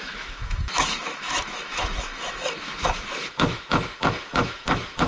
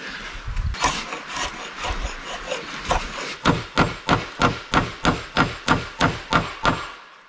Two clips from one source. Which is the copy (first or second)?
first